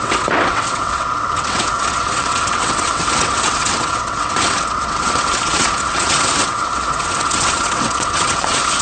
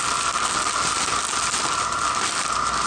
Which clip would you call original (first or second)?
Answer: second